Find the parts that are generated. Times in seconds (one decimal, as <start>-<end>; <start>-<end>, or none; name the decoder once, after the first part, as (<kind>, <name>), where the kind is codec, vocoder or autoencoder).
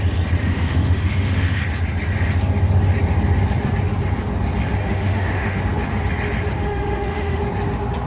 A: 0.4-1.6 (autoencoder, DAC-VAE); 4.8-5.6; 6.6-7.4